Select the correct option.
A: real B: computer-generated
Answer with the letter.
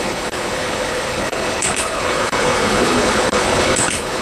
B